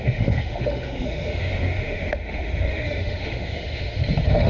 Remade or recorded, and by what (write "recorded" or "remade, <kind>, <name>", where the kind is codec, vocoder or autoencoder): remade, autoencoder, DAC-VAE